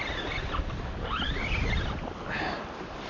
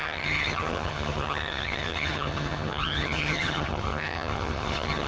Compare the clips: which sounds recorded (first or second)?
first